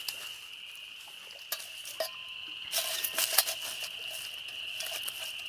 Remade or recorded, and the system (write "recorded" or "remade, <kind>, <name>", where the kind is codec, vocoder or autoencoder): recorded